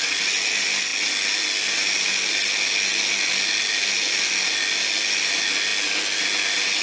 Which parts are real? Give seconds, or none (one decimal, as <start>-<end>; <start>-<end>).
0.0-6.8